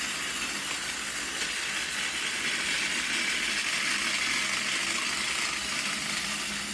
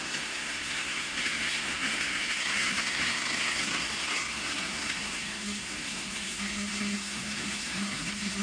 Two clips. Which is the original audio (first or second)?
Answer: first